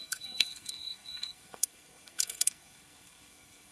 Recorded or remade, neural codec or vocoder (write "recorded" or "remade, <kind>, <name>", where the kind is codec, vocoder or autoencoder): remade, codec, SNAC